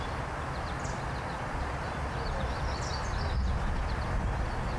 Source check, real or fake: real